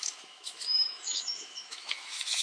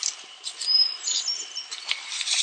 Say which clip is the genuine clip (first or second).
second